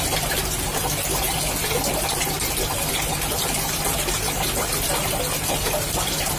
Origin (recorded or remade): recorded